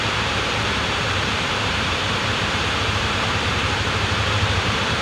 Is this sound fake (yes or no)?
yes